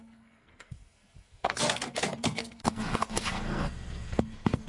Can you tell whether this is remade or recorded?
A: remade